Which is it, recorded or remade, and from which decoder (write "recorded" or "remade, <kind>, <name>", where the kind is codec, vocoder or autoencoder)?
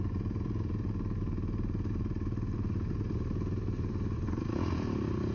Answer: recorded